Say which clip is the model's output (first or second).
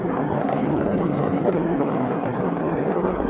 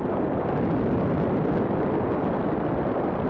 first